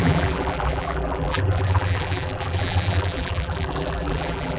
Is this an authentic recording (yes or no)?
no